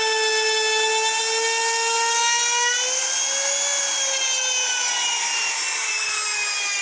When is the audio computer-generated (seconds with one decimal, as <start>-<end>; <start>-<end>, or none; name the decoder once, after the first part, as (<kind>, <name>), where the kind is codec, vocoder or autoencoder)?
none